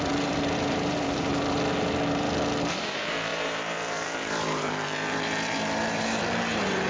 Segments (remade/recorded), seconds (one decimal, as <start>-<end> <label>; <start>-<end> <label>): 0.0-1.3 remade; 1.3-2.7 recorded; 2.7-6.9 remade